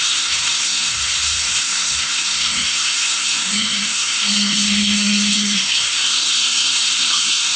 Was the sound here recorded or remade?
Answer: remade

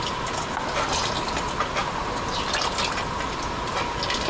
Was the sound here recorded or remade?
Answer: recorded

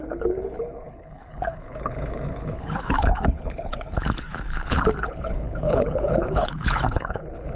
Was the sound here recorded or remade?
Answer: remade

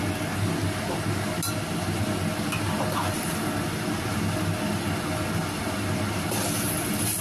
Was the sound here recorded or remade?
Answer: recorded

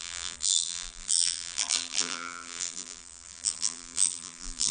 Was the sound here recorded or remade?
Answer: remade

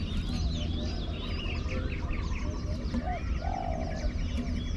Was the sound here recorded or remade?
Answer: recorded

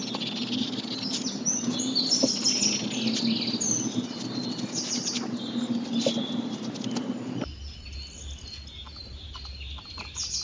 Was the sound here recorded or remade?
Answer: recorded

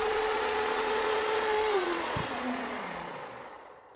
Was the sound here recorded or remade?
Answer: remade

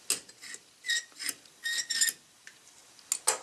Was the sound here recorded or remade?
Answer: recorded